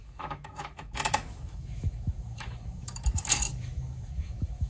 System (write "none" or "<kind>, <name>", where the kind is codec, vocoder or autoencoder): autoencoder, DAC-VAE